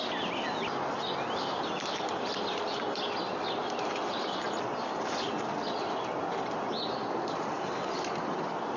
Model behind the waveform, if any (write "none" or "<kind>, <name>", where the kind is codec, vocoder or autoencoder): none